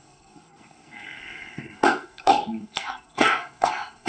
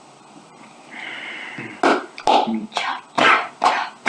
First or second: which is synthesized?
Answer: first